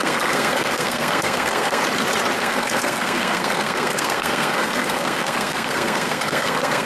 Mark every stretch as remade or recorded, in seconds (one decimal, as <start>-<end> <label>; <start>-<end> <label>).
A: 0.0-1.8 remade; 1.8-2.4 recorded; 2.4-6.9 remade